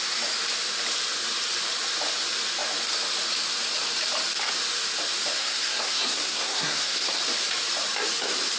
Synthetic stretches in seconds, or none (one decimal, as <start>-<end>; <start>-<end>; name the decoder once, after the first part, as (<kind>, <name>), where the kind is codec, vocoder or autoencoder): 5.4-7.1 (codec, SNAC)